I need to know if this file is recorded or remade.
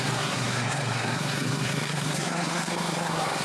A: remade